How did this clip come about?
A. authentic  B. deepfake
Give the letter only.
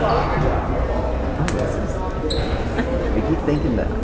A